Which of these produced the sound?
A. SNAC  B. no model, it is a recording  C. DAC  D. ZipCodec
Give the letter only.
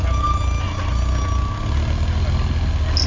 B